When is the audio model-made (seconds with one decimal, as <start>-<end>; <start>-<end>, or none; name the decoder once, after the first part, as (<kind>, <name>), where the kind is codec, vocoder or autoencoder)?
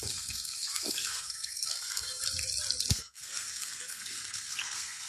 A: 0.0-2.2 (codec, SNAC); 2.9-5.1